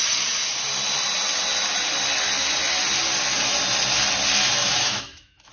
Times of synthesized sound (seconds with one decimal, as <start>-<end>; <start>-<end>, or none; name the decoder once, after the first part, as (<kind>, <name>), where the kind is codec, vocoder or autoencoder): 4.6-5.5 (autoencoder, DAC-VAE)